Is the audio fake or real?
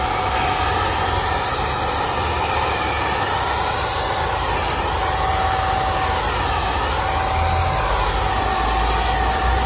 real